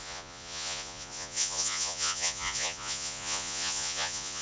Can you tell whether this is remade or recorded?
remade